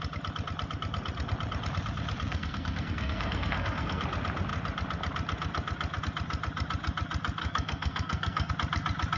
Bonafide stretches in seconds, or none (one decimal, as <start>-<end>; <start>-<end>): 0.0-2.3; 4.0-7.4; 8.5-9.2